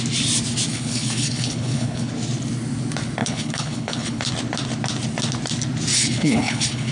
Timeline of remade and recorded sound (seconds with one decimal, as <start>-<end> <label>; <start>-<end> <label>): 0.0-0.7 recorded; 0.7-2.1 remade; 2.1-3.2 recorded; 3.2-4.3 remade; 4.3-5.9 recorded; 5.9-6.9 remade